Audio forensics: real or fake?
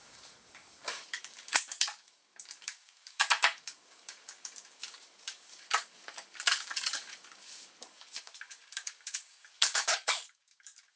fake